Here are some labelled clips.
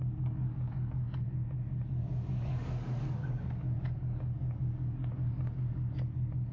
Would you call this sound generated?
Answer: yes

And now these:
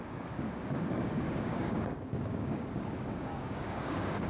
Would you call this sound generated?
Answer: yes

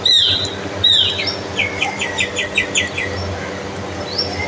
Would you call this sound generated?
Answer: no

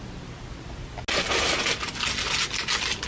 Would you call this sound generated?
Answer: no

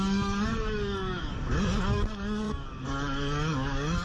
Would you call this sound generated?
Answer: yes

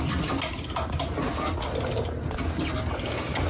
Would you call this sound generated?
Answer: no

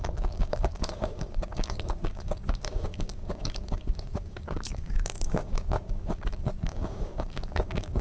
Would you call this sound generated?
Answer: yes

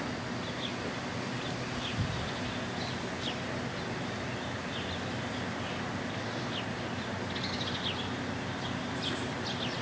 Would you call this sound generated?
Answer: no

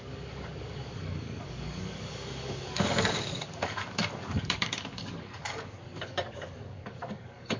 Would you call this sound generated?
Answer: yes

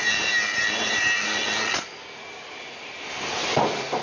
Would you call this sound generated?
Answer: no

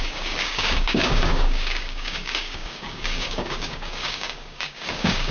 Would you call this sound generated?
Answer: yes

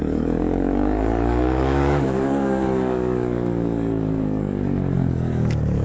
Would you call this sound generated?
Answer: yes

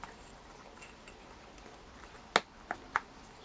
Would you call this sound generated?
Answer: no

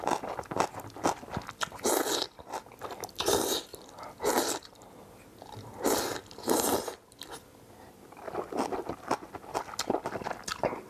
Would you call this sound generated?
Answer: no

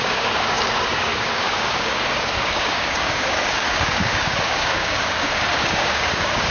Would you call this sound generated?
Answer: yes